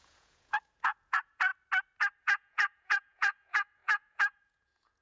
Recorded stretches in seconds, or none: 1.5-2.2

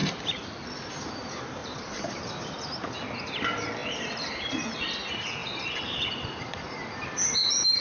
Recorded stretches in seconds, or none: 1.0-1.6; 2.3-3.8; 4.5-7.8

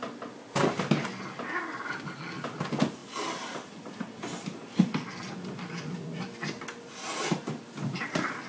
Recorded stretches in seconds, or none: 0.0-8.5

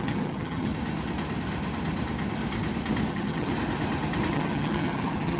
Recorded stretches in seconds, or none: 0.7-3.1; 3.5-4.3

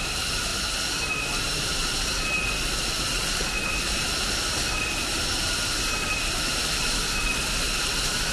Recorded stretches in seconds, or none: 0.0-8.3

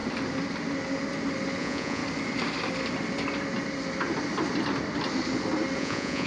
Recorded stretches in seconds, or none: 0.0-1.6; 2.0-5.8

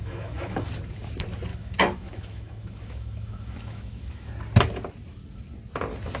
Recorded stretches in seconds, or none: 0.7-1.5; 4.3-6.2